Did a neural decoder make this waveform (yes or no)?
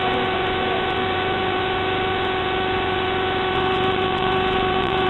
yes